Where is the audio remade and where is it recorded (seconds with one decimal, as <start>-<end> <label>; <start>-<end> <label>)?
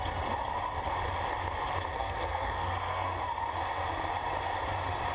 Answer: 0.0-1.9 recorded; 1.9-3.2 remade; 3.2-5.1 recorded